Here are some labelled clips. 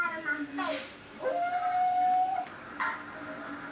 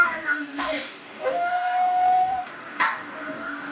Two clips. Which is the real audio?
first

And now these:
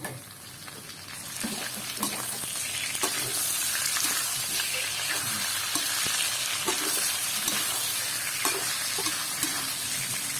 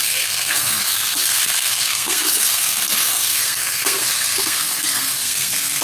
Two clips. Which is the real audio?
first